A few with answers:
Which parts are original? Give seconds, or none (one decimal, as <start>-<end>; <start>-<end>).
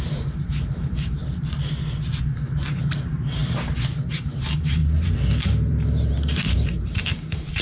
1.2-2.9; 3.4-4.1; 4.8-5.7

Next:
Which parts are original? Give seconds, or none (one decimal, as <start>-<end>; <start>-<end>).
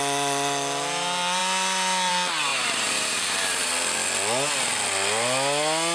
0.0-2.5; 3.7-5.9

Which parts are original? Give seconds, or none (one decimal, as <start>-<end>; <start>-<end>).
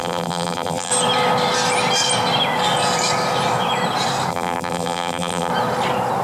0.9-4.3; 5.5-6.2